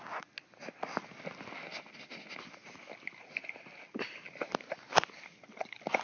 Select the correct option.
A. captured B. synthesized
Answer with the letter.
A